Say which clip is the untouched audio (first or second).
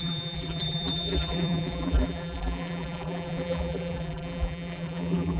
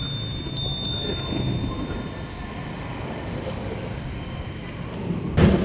second